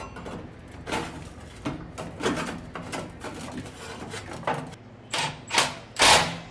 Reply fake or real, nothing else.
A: real